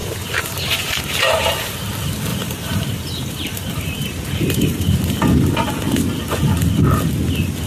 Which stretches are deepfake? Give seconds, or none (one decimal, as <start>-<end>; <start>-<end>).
0.0-1.7; 2.3-5.5

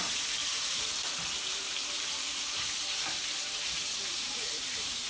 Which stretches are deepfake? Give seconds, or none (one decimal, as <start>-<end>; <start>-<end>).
0.0-5.1

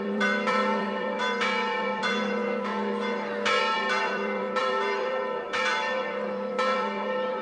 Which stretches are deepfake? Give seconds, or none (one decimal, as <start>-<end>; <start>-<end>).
0.0-2.4; 3.6-7.4

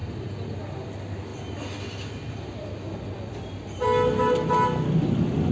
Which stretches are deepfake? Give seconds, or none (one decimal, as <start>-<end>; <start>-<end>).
none

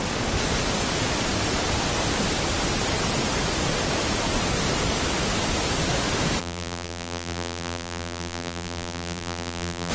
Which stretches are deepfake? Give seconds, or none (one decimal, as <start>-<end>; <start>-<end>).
6.4-9.9

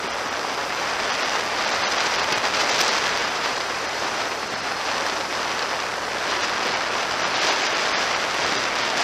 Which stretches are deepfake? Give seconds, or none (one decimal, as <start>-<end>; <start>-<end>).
3.2-4.7

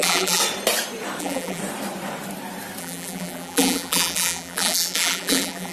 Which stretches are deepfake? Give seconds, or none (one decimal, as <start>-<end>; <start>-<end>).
0.0-0.4; 1.2-1.6; 2.8-5.7

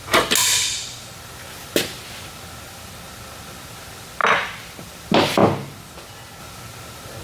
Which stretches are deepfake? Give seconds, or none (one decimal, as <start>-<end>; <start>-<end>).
none